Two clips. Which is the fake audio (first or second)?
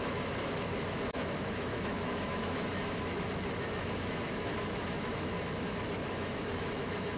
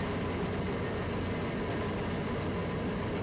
first